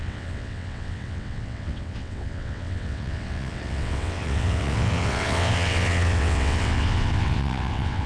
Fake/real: fake